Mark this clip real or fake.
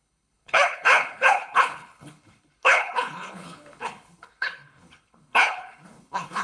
fake